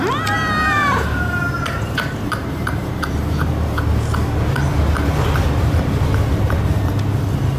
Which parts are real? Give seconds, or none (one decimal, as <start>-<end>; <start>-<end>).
0.0-0.8; 3.9-7.6